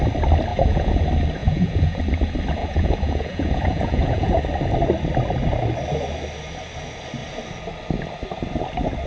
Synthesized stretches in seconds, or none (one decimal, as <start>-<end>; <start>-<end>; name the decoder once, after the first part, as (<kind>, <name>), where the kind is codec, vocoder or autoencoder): 0.5-1.0 (vocoder, Vocos); 1.4-2.0; 2.6-4.4